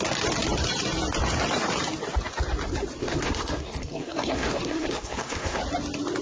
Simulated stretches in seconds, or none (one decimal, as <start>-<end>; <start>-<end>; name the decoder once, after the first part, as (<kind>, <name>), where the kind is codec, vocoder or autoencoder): 3.0-5.6 (codec, SNAC)